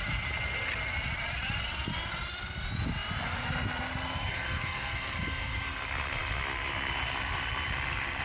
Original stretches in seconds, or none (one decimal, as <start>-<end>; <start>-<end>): 0.0-8.2